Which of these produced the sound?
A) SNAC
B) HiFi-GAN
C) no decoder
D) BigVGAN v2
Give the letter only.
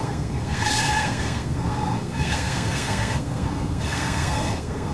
A